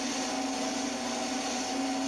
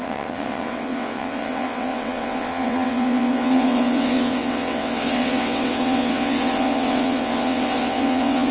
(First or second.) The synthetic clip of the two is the second